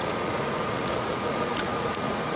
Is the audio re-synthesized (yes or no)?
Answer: yes